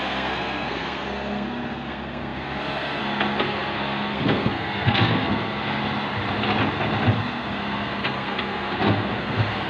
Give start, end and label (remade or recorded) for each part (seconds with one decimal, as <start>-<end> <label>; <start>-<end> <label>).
0.0-5.8 remade; 5.8-7.2 recorded; 7.2-9.7 remade